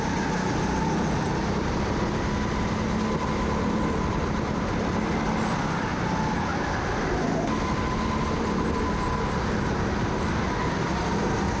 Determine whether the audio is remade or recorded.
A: recorded